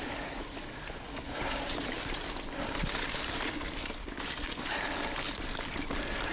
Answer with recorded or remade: recorded